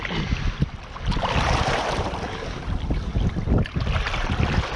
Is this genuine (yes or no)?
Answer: yes